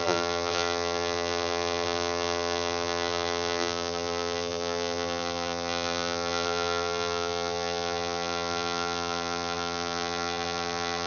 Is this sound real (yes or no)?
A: no